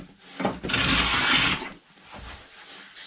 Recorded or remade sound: recorded